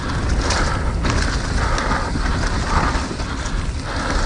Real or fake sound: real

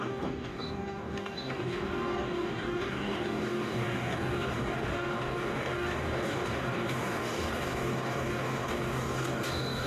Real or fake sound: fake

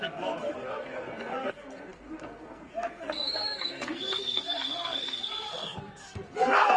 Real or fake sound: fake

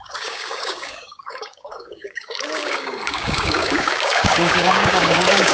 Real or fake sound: fake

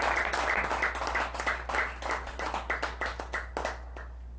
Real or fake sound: real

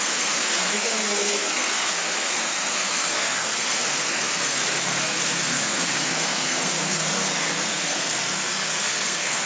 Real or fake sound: fake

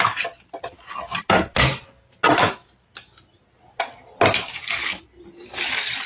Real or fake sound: real